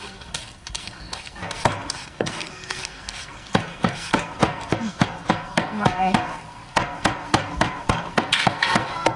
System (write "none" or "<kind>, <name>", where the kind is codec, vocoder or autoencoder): codec, SNAC